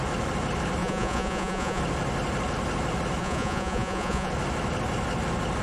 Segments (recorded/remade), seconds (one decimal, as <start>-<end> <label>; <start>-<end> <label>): 0.0-0.8 recorded; 0.8-1.8 remade; 1.8-3.2 recorded; 3.2-4.3 remade; 4.3-5.6 recorded